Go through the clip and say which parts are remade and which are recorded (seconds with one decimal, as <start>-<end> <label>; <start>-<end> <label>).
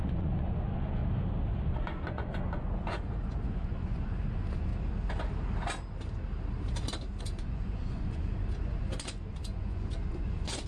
0.0-1.0 remade; 1.0-1.7 recorded; 1.7-4.7 remade; 4.7-7.2 recorded; 7.2-10.7 remade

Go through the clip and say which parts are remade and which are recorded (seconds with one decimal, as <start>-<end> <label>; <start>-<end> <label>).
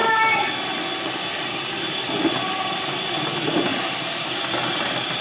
0.0-3.7 recorded; 3.7-4.3 remade; 4.3-5.2 recorded